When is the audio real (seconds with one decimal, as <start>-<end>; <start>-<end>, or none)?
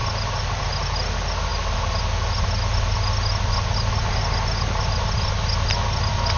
0.0-6.4